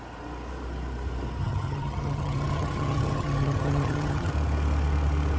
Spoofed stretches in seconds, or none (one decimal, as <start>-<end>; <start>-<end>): 1.4-4.3

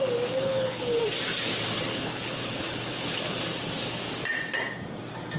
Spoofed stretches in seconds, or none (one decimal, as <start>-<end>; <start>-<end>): 0.4-1.0; 1.9-3.4

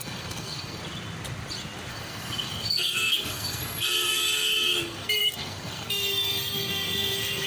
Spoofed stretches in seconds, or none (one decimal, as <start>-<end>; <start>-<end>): 0.0-0.8; 1.9-7.5

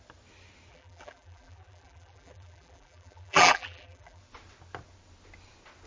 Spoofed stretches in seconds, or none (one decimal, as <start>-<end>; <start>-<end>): 0.7-4.2